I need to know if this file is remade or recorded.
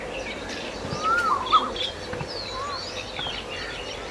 recorded